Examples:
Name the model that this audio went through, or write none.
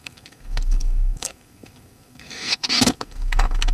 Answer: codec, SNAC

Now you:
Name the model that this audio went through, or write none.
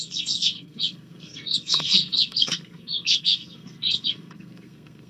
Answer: codec, SNAC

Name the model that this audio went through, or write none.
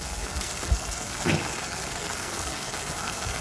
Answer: codec, SNAC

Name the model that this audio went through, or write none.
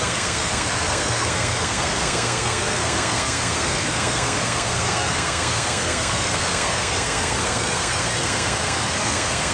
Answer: codec, SNAC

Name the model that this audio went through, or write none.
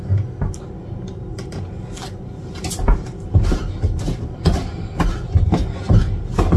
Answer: none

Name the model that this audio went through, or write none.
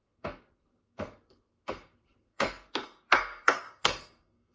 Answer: codec, SNAC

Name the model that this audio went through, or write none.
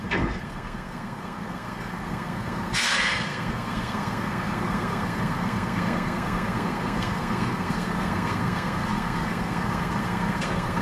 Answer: codec, SNAC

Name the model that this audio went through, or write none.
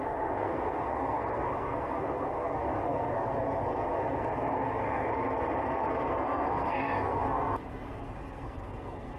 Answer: codec, SNAC